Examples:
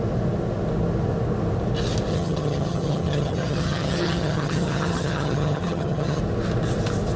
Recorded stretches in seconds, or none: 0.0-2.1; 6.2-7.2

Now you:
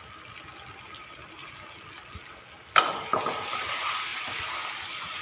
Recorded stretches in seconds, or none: 0.0-5.2